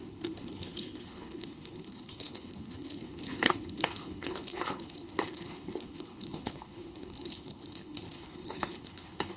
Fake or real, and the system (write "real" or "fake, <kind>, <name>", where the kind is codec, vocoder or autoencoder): fake, codec, HILCodec